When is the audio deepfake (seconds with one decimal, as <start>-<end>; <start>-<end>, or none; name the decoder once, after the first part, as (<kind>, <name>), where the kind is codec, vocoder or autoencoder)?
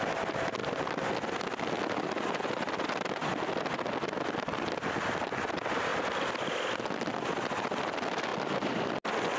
none